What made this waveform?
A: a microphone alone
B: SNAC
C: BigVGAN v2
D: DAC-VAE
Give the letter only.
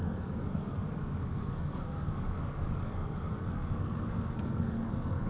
B